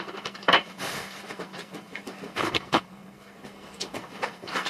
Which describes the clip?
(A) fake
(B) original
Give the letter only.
A